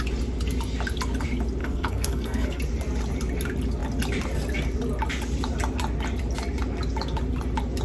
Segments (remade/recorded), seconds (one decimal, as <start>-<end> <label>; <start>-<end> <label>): 0.0-1.6 recorded; 1.6-2.6 remade; 2.6-7.8 recorded